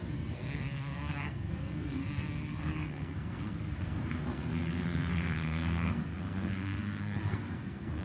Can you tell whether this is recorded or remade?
remade